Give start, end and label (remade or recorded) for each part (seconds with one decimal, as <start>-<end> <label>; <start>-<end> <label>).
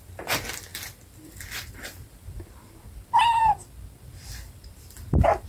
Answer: 0.0-5.5 remade